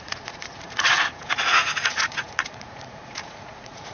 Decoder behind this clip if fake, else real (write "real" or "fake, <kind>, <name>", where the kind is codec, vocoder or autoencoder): fake, vocoder, Vocos